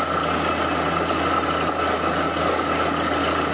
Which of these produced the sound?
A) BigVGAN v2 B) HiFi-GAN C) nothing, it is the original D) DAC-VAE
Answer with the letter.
C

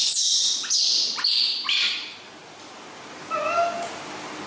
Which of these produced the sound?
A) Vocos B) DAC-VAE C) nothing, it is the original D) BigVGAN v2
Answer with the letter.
C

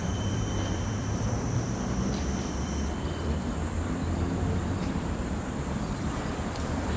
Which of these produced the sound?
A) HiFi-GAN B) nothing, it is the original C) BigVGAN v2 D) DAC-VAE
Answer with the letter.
C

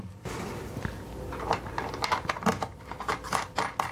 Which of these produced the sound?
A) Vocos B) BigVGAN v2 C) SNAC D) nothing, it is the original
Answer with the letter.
D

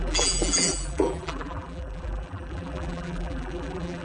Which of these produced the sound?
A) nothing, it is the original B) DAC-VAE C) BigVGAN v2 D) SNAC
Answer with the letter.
C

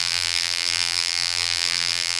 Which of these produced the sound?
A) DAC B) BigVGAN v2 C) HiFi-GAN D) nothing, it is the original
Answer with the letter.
B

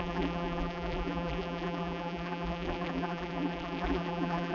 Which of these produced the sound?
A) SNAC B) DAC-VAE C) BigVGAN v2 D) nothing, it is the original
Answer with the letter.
C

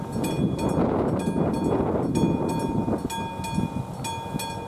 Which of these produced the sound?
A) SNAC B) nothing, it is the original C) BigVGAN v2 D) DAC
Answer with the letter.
B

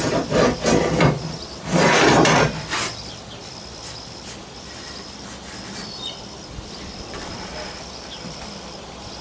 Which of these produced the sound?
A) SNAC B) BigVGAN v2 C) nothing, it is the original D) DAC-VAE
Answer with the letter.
B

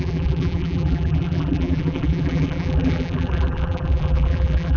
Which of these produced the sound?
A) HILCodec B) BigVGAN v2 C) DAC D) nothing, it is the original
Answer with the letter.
B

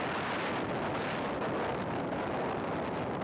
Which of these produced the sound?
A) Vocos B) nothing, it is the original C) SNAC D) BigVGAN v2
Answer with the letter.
B